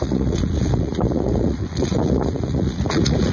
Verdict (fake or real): fake